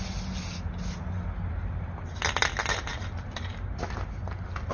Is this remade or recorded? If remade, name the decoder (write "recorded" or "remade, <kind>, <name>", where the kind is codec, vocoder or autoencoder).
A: recorded